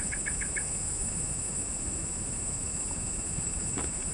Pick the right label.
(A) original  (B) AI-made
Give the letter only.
B